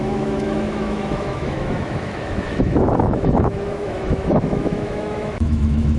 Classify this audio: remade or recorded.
remade